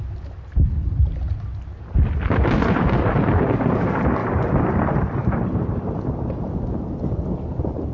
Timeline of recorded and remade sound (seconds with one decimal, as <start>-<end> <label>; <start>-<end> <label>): 0.0-4.2 recorded; 4.2-4.7 remade; 4.7-5.2 recorded; 5.2-6.4 remade; 6.4-7.9 recorded